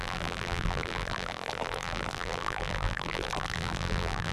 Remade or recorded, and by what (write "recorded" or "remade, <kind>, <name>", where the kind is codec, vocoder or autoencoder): remade, vocoder, BigVGAN v2